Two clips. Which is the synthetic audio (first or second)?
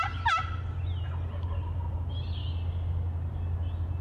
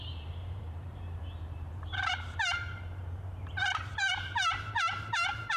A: second